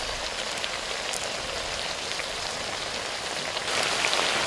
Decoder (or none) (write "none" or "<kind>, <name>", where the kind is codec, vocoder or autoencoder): none